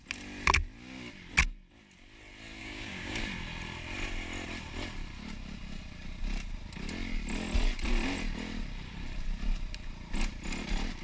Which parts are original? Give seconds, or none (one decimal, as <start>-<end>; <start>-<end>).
0.0-2.6; 3.2-11.0